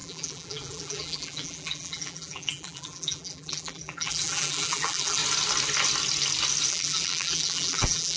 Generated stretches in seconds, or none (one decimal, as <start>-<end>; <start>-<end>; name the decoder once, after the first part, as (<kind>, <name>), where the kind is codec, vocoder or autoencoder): 0.0-5.2 (vocoder, BigVGAN v2); 6.7-8.2